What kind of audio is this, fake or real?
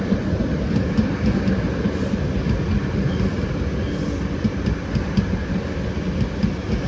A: real